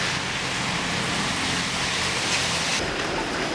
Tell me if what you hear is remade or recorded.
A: recorded